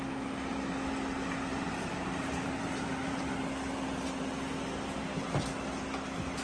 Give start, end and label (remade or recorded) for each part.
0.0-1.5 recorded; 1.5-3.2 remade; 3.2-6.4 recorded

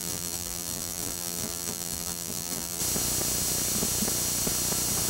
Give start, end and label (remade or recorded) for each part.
0.0-2.8 remade; 2.8-5.1 recorded

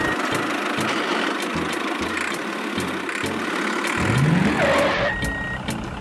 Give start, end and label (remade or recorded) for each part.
0.0-1.1 recorded; 1.1-4.7 remade; 4.7-6.0 recorded

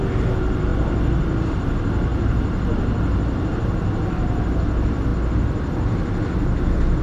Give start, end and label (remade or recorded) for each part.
0.0-7.0 recorded

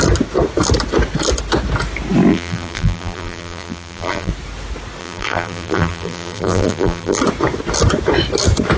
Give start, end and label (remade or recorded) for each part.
0.0-2.3 recorded; 2.3-4.3 remade; 4.3-5.0 recorded; 5.0-7.2 remade; 7.2-8.8 recorded

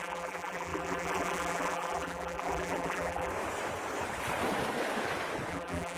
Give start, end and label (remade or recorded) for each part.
0.0-3.3 remade; 3.3-5.5 recorded; 5.5-6.0 remade

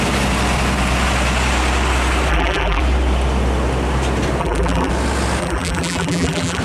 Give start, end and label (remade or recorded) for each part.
0.0-2.3 recorded; 2.3-2.8 remade; 2.8-4.4 recorded; 4.4-4.9 remade; 4.9-5.4 recorded; 5.4-6.6 remade

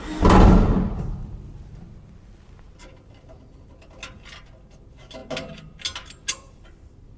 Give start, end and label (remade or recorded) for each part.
0.0-7.2 recorded